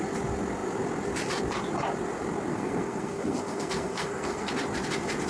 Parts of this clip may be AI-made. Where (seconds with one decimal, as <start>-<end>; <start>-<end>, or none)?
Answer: 2.5-4.5